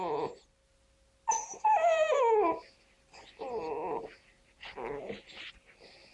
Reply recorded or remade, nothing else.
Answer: recorded